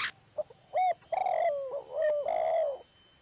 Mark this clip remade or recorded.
recorded